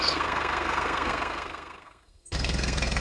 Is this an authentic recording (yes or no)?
no